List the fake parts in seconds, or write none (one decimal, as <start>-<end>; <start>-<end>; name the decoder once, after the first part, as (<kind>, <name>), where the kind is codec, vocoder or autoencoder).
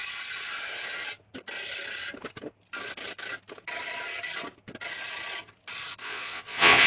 6.0-6.9 (vocoder, Vocos)